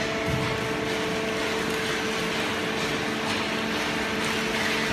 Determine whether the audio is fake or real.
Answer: real